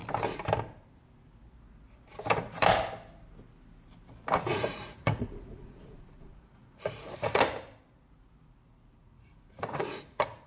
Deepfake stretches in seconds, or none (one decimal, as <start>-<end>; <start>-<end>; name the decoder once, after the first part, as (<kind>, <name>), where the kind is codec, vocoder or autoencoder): 4.5-7.4 (vocoder, Vocos); 9.0-10.5